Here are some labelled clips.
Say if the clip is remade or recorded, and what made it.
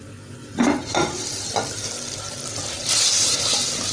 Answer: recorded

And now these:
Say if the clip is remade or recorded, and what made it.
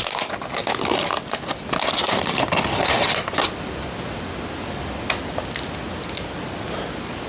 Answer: recorded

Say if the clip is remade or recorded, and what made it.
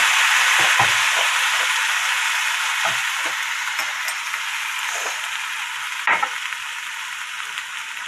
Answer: recorded